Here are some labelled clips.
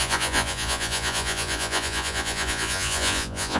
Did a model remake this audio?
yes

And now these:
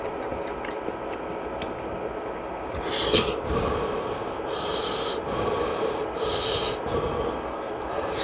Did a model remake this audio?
no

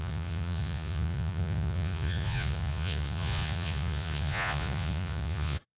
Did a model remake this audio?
yes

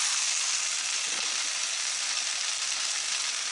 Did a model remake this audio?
no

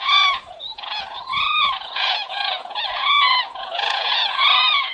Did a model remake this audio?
yes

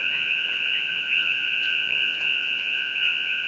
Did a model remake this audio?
yes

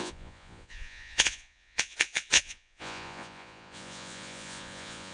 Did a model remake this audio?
yes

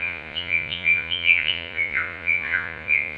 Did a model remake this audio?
yes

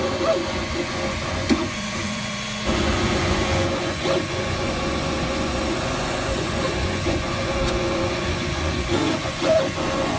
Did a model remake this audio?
yes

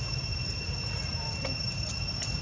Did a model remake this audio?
no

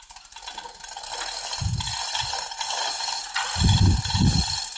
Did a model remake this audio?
no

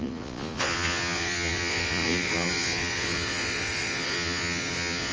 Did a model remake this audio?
yes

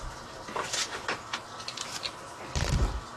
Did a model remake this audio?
no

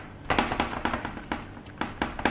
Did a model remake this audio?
no